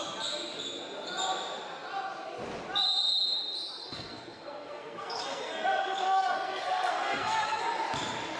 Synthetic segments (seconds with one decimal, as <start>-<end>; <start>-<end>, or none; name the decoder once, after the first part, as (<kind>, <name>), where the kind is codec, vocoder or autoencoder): 3.8-7.6 (codec, SNAC)